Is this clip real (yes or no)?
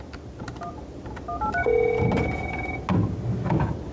yes